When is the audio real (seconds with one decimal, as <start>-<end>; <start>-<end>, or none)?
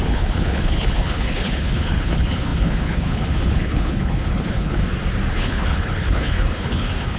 4.8-5.3